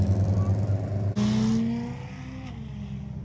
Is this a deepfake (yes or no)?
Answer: no